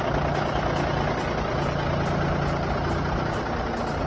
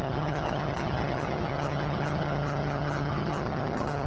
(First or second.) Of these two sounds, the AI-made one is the second